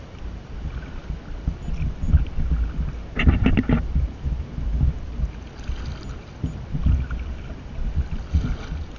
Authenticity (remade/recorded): recorded